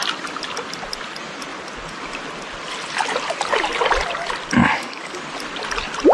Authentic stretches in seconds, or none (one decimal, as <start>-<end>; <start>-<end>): 0.0-4.6; 5.2-6.1